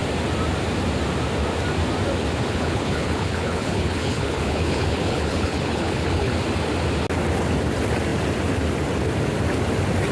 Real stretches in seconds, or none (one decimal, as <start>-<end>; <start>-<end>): 0.0-2.5; 6.3-10.1